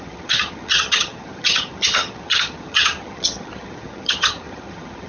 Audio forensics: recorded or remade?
remade